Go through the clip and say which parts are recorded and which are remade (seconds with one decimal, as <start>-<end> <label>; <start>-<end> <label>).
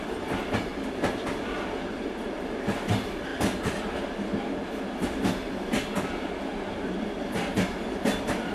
0.0-8.5 recorded